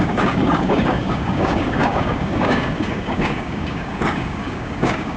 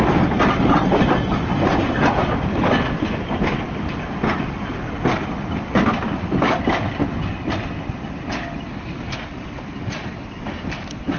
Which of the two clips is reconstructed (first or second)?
first